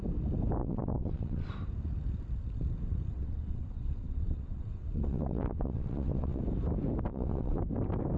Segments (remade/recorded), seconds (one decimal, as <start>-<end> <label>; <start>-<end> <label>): 0.0-0.6 recorded; 0.6-1.5 remade; 1.5-3.1 recorded; 3.1-6.4 remade; 6.4-7.1 recorded; 7.1-7.6 remade; 7.6-8.2 recorded